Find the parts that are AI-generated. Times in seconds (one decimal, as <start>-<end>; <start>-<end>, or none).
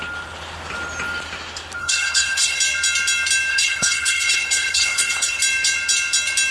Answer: 1.8-2.6; 3.5-5.4